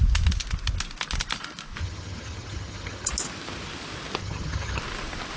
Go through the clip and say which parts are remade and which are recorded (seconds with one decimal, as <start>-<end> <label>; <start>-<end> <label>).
0.0-1.8 recorded; 1.8-3.1 remade; 3.1-4.2 recorded; 4.2-4.8 remade; 4.8-5.4 recorded